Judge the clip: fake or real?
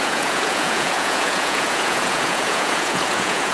fake